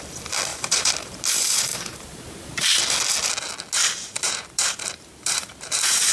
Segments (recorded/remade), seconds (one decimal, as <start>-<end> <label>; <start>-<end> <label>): 0.0-0.5 recorded; 0.5-1.2 remade; 1.2-1.7 recorded; 1.7-2.8 remade; 2.8-3.8 recorded; 3.8-6.1 remade